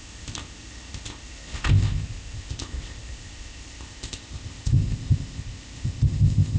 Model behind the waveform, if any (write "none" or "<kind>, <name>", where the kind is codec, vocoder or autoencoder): codec, ZipCodec